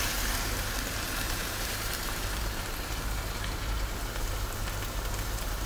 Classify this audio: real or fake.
fake